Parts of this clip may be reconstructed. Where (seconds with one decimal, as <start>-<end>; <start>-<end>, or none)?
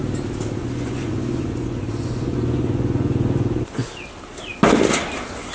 0.6-3.9